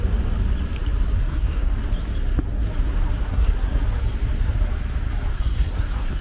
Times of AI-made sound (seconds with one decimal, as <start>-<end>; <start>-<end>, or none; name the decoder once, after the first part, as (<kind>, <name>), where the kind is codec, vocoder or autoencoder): 1.2-1.7 (codec, SNAC); 3.3-3.8; 5.3-6.2